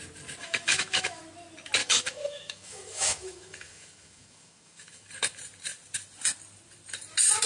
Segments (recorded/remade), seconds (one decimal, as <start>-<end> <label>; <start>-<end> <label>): 0.0-0.4 recorded; 0.4-1.2 remade; 1.2-1.8 recorded; 1.8-5.1 remade; 5.1-7.5 recorded